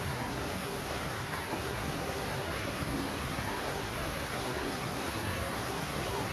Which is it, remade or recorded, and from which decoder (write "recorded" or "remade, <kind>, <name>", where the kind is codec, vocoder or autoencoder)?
remade, codec, SNAC